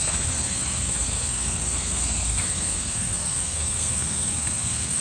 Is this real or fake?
fake